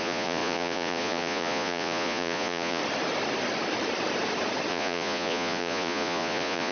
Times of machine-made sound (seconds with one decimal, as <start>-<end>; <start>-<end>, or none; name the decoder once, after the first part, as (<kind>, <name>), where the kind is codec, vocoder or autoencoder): 0.0-2.8 (vocoder, Vocos); 4.7-6.7